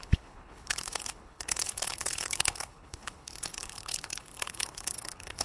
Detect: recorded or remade remade